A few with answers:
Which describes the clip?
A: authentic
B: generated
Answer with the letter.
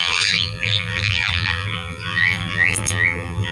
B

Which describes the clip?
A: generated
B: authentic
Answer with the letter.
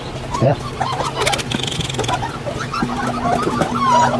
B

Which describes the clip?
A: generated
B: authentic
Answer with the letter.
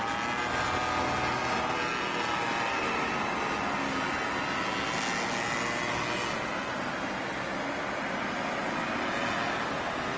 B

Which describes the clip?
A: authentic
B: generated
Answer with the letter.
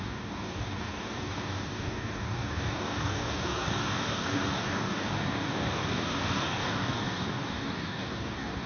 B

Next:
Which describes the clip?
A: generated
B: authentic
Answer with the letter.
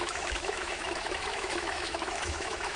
A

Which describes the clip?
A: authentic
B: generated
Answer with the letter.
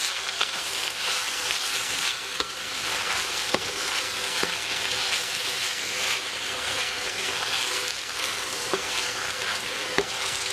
B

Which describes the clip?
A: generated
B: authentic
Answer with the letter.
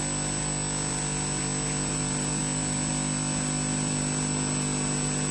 B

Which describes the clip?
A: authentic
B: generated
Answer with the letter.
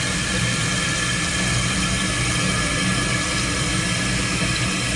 A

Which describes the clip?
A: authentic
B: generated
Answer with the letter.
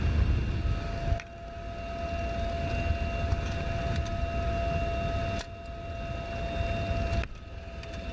A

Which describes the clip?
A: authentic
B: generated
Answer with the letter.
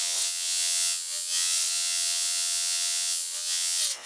B